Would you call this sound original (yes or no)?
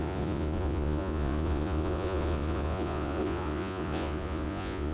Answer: no